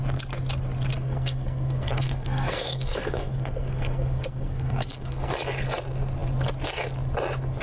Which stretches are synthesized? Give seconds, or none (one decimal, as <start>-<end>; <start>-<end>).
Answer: 0.9-5.3